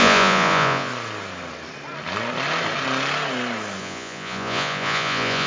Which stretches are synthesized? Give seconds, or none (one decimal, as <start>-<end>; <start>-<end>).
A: 0.0-0.9; 3.8-5.5